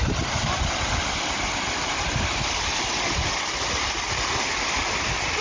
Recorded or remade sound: recorded